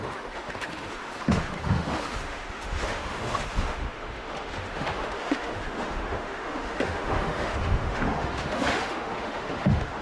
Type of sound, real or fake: fake